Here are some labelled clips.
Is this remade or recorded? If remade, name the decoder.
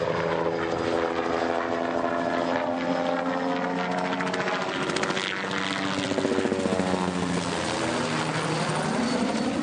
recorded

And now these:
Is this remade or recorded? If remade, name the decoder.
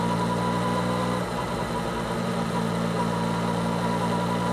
recorded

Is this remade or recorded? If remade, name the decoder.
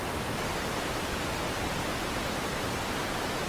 recorded